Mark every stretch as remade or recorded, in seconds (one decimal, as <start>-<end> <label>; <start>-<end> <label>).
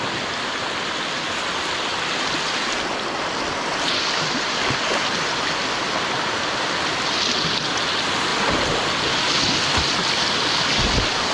0.0-11.3 recorded